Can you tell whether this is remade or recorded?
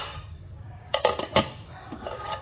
remade